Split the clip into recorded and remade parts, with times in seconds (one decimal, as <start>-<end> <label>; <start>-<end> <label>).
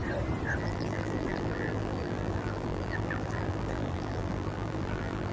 0.0-0.6 recorded; 0.6-5.3 remade